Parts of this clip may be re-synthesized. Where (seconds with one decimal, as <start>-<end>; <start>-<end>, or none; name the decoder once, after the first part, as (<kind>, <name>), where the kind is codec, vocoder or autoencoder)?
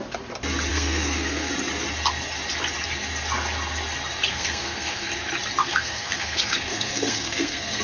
0.7-1.5 (codec, SNAC); 4.3-5.1; 5.6-7.8